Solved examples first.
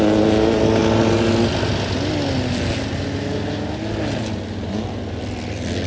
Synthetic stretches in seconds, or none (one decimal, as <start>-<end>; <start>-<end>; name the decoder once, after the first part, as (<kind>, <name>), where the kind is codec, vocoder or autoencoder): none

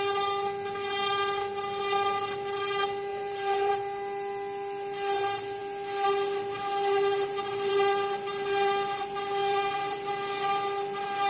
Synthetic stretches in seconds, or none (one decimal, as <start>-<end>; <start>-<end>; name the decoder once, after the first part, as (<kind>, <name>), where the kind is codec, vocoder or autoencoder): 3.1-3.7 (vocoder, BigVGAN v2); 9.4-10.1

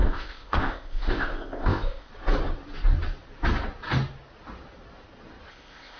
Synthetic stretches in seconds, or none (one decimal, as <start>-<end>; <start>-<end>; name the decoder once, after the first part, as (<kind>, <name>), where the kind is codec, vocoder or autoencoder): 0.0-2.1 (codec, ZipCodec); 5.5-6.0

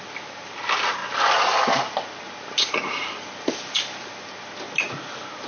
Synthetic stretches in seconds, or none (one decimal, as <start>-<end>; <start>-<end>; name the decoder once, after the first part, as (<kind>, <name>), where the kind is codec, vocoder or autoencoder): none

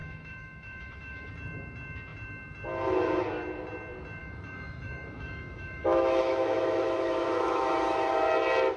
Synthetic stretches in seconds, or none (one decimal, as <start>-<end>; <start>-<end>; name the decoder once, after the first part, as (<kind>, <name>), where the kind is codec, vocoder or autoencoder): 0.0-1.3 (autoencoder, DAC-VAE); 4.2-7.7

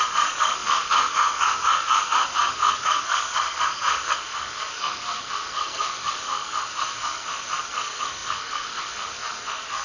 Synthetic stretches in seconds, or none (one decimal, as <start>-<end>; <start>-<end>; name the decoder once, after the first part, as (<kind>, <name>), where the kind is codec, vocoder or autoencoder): 0.0-9.8 (codec, SNAC)